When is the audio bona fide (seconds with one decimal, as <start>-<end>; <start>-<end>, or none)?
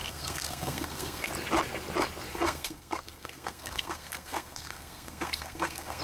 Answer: 1.3-2.3